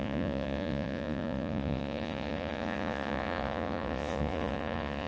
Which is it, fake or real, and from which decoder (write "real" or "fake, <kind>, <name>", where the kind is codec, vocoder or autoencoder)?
fake, vocoder, Vocos